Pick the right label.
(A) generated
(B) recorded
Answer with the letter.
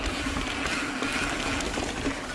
B